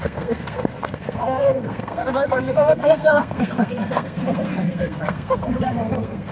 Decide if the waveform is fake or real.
fake